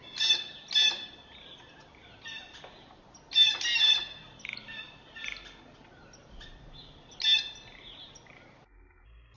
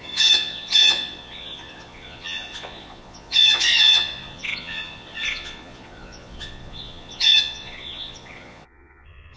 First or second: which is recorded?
first